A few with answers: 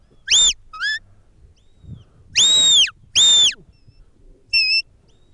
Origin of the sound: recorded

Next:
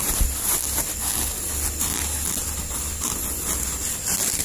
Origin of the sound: recorded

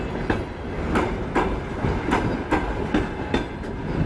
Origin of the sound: recorded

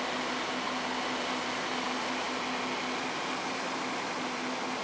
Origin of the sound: recorded